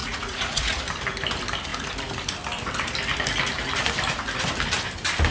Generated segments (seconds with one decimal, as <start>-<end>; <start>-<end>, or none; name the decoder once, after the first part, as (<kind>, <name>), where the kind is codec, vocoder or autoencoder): 0.0-0.8 (vocoder, Vocos)